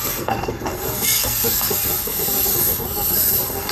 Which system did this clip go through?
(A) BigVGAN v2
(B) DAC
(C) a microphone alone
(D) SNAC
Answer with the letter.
D